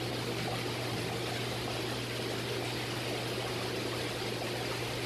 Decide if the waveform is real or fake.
real